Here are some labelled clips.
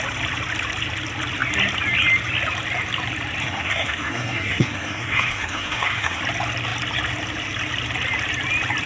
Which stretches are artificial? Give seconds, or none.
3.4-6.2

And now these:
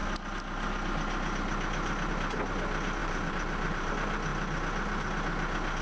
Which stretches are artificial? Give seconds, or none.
3.0-3.9